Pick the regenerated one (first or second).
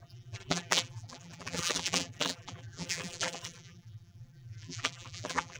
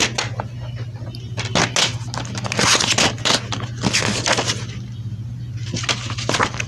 first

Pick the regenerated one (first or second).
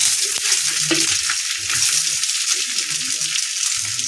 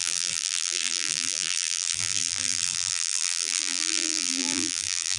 second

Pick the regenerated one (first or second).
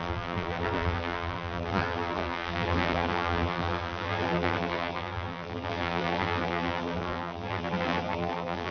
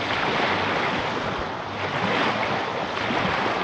first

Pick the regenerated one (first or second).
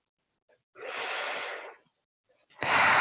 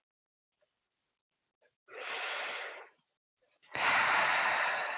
second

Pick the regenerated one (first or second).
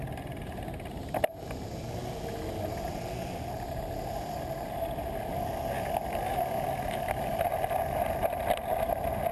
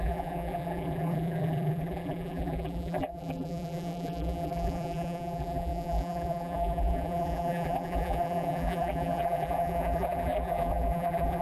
second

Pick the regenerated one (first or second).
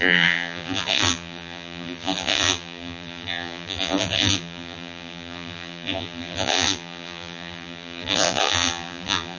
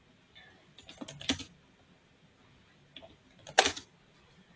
first